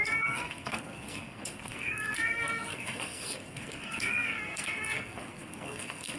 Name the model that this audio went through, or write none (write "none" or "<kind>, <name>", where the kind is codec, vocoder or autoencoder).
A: codec, SNAC